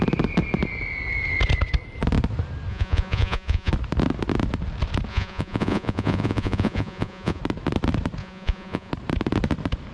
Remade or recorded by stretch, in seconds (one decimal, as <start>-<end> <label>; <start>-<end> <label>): 0.0-2.7 recorded; 2.7-3.7 remade; 3.7-5.1 recorded; 5.1-7.4 remade; 7.4-8.2 recorded; 8.2-8.9 remade; 8.9-9.9 recorded